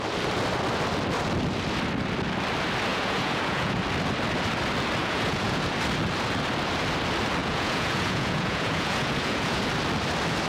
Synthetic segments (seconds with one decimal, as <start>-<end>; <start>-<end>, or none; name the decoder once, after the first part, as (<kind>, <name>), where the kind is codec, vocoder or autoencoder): 2.9-3.8 (vocoder, Vocos); 5.0-5.6; 7.4-9.6